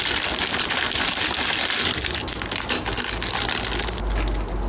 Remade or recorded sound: recorded